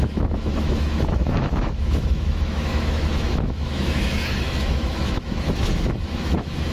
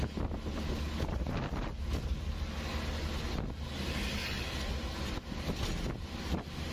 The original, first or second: second